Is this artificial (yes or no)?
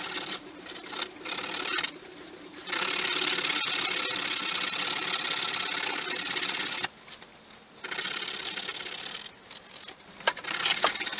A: no